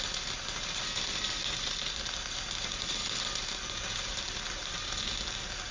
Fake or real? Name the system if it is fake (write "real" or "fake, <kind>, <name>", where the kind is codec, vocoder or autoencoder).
real